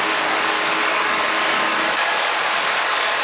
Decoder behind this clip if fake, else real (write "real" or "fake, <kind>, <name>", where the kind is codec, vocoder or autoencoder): fake, codec, DAC